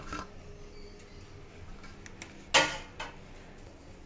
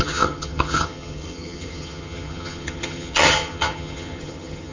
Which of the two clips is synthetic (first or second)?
second